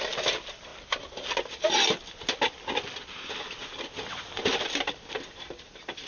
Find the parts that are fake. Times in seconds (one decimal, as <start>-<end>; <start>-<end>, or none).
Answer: none